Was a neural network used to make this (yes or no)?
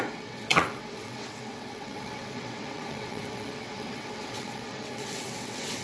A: yes